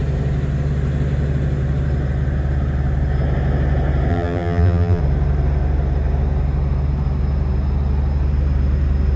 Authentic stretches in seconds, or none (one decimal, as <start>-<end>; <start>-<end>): 0.0-4.1; 5.0-9.2